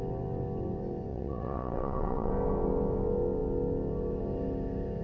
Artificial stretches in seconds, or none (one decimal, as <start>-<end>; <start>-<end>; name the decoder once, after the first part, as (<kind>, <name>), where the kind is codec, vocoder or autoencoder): 1.1-2.3 (vocoder, WaveNeXt)